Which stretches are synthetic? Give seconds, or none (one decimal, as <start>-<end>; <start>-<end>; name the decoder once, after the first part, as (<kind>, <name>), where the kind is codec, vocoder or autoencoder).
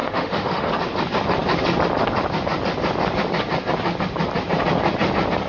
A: 0.0-0.7 (autoencoder, DAC-VAE)